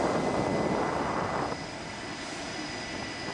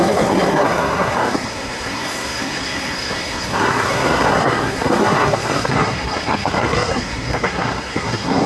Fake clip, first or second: second